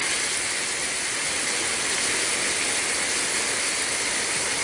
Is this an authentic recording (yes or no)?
yes